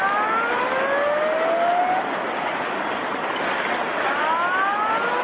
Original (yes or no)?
yes